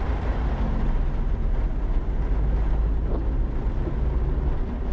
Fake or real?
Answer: real